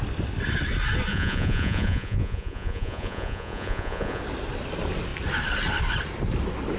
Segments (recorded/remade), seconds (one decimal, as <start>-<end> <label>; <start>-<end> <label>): 0.0-1.1 recorded; 1.1-4.2 remade; 4.2-6.8 recorded